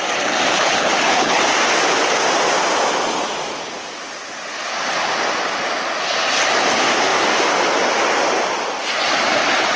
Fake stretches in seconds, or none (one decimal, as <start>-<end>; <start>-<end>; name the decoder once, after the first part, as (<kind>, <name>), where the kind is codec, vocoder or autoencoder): 0.5-1.4 (codec, HILCodec)

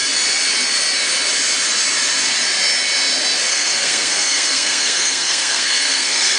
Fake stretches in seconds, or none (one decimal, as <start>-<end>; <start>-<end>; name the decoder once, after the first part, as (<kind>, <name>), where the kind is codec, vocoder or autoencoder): 3.5-6.4 (codec, SNAC)

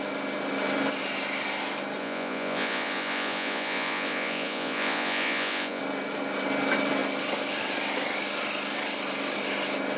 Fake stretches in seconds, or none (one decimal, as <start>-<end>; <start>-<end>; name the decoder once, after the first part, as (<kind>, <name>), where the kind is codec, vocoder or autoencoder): 2.0-5.8 (vocoder, Vocos)